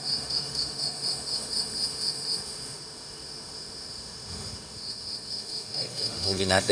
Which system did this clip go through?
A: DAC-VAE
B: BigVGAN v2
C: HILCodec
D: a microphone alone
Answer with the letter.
A